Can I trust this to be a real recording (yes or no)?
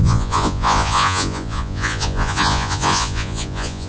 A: no